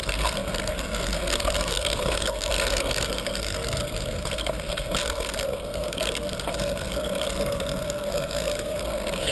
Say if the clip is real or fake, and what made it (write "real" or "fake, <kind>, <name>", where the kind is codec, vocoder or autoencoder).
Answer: fake, codec, SNAC